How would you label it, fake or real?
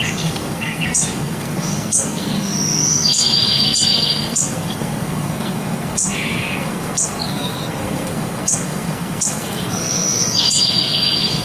fake